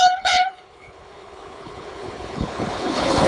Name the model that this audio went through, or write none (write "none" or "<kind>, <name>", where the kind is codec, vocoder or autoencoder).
codec, HILCodec